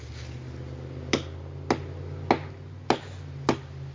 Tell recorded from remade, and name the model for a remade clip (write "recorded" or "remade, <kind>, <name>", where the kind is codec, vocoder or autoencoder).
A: recorded